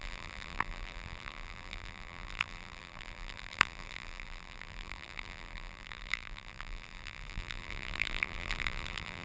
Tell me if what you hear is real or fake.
fake